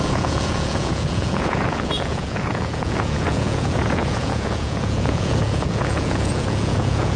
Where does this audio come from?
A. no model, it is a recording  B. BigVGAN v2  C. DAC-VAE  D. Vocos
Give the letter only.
D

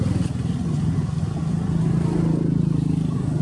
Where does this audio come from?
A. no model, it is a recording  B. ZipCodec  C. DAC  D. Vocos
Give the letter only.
A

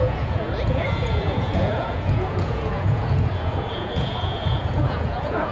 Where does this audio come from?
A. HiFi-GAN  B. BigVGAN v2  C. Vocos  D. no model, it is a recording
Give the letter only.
C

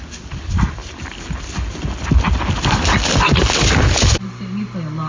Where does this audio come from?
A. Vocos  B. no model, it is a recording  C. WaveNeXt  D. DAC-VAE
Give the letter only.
B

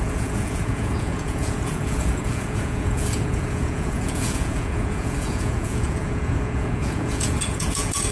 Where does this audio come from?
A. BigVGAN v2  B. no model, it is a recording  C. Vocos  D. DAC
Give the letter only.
C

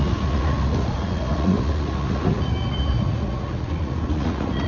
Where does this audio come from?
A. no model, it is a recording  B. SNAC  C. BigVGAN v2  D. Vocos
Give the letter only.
D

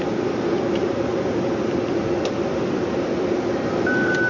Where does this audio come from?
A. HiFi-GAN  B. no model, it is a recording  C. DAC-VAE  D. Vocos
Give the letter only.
B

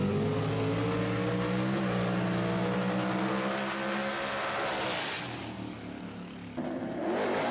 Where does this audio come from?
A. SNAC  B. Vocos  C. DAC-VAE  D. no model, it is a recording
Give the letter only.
D